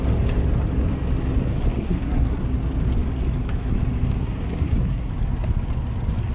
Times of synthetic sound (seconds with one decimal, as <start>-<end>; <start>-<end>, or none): 1.6-2.4; 4.2-5.1